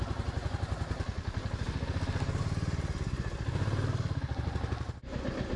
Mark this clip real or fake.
real